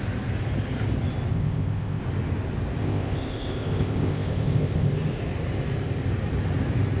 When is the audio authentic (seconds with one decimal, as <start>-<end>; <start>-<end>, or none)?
0.0-1.3; 2.0-2.8; 4.9-7.0